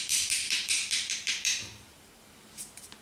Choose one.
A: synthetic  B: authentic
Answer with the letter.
A